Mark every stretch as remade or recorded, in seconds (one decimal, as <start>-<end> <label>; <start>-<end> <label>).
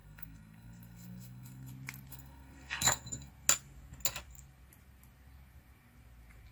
0.0-1.7 remade; 1.7-2.1 recorded; 2.1-3.3 remade; 3.3-6.5 recorded